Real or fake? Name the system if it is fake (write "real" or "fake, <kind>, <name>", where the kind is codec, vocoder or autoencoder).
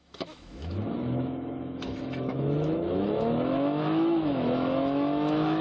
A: fake, autoencoder, DAC-VAE